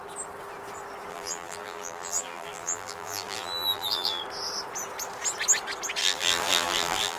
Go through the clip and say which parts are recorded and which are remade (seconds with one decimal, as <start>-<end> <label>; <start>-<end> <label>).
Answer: 0.0-1.1 recorded; 1.1-4.2 remade; 4.2-6.0 recorded; 6.0-7.2 remade

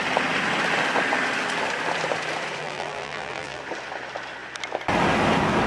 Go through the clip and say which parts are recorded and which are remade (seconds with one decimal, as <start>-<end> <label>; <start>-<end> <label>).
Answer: 0.0-2.6 recorded; 2.6-3.6 remade; 3.6-5.7 recorded

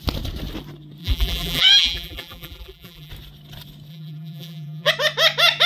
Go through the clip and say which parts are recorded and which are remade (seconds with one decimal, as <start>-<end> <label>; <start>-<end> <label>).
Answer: 0.0-1.0 recorded; 1.0-3.1 remade; 3.1-3.9 recorded; 3.9-4.9 remade; 4.9-5.7 recorded

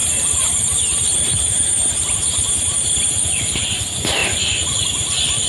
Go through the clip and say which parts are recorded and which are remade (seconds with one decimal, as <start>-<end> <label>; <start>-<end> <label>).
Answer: 0.0-3.3 remade; 3.3-5.5 recorded

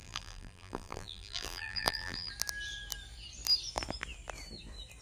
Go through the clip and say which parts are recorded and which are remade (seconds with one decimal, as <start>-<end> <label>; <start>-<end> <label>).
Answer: 0.0-2.3 remade; 2.3-5.0 recorded